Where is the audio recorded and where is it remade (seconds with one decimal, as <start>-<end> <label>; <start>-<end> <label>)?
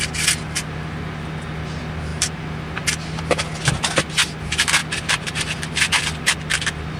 0.0-4.8 recorded; 4.8-7.0 remade